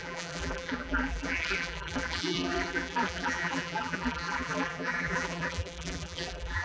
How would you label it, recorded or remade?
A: remade